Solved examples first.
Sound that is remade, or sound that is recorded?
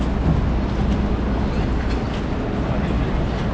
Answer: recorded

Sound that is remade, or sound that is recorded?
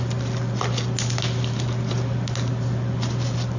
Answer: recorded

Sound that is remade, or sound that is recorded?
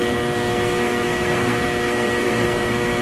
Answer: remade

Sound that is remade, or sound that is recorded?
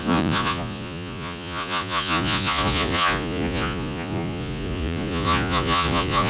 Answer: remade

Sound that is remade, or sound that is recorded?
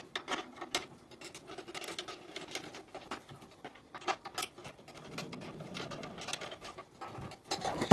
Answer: recorded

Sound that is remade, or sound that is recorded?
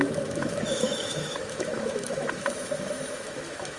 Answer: remade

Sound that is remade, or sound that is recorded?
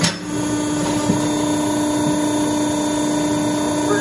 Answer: recorded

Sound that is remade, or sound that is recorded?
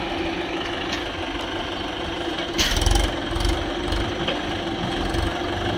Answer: recorded